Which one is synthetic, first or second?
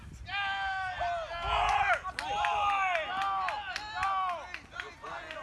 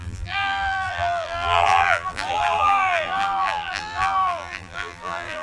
second